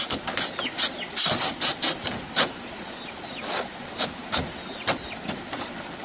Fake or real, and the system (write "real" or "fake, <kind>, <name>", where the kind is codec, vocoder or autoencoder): real